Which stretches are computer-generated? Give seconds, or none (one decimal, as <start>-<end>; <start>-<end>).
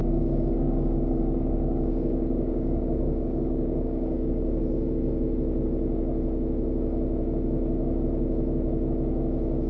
0.0-4.6